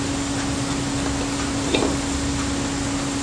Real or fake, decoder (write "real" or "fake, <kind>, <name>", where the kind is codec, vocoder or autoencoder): real